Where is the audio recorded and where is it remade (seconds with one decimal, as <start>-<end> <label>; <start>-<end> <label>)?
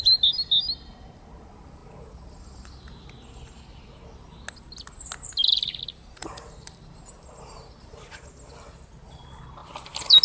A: 0.0-6.2 recorded; 6.2-7.0 remade; 7.0-9.6 recorded; 9.6-10.2 remade